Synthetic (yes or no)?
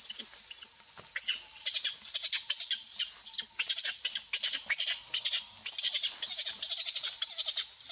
no